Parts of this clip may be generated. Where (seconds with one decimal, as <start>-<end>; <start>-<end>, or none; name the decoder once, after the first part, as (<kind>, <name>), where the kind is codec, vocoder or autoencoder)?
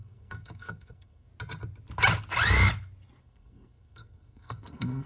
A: 0.0-1.3 (codec, SNAC); 3.2-5.1